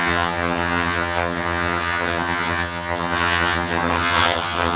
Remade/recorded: remade